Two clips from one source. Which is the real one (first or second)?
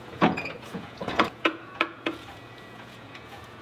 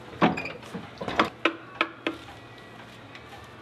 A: second